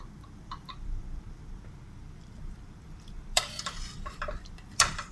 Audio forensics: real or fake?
fake